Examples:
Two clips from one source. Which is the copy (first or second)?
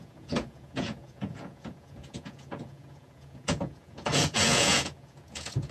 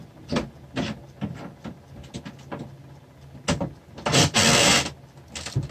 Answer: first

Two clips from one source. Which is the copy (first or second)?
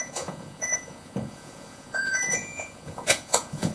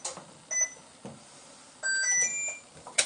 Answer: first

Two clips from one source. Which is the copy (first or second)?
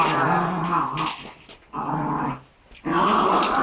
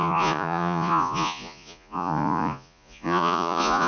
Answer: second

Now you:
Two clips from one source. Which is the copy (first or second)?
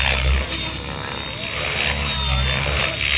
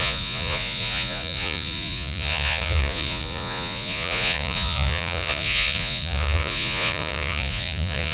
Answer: second